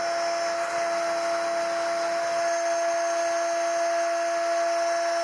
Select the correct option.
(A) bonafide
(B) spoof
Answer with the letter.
A